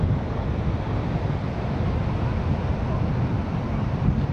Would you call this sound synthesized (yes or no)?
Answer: no